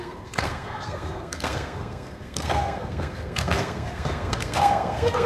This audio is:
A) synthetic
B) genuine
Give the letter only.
A